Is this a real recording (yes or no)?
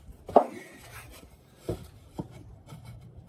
no